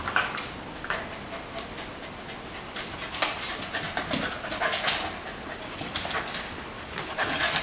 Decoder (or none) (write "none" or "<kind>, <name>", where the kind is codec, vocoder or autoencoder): none